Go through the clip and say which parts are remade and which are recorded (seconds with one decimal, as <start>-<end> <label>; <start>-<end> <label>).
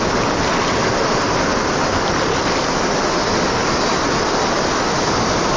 0.0-5.6 recorded